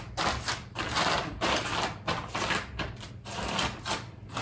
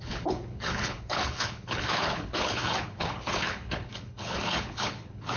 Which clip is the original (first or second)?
first